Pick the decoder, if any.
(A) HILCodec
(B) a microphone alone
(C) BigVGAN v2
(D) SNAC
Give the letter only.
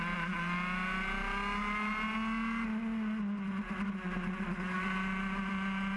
B